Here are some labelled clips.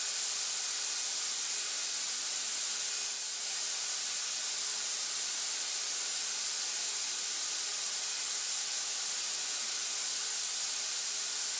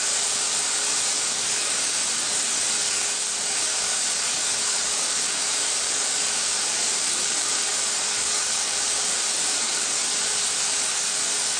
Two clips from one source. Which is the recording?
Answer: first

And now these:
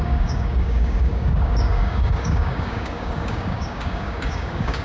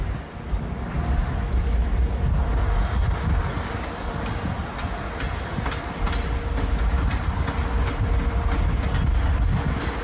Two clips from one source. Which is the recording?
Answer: second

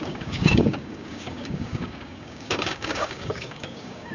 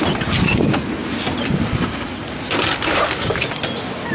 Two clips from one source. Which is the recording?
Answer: second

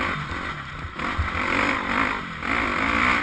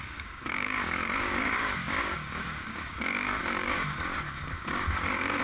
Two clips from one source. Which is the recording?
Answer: first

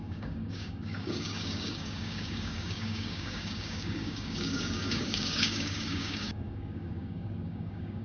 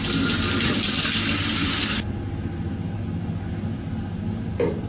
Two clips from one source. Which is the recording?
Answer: second